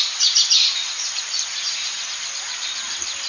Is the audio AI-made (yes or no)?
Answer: no